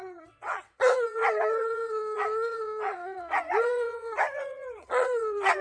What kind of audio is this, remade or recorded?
remade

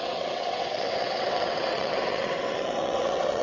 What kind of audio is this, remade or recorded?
remade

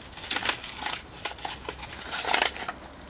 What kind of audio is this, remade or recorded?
recorded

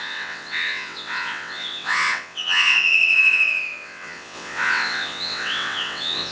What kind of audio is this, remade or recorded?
remade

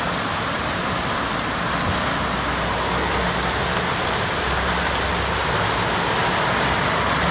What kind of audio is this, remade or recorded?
recorded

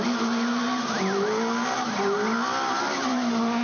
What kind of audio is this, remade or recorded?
recorded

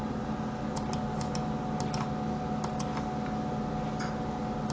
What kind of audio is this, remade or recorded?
recorded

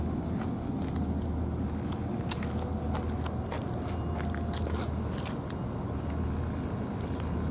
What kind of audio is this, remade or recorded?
recorded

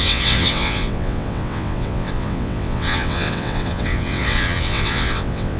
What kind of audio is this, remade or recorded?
remade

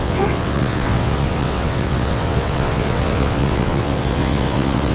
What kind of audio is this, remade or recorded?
remade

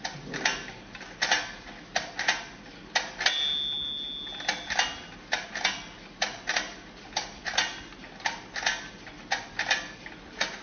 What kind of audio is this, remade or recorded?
recorded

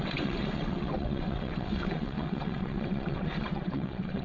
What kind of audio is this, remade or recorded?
remade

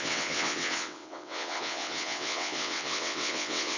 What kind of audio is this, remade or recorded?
remade